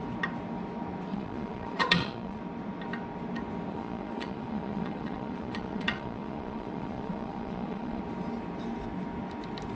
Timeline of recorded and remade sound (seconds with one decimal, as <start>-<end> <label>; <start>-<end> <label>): 0.0-1.1 recorded; 1.1-2.4 remade; 2.4-3.7 recorded; 3.7-8.0 remade; 8.0-9.7 recorded